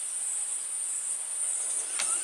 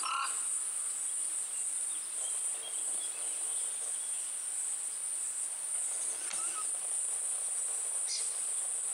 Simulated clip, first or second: first